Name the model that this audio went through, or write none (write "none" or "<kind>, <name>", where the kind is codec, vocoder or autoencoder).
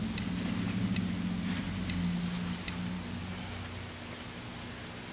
none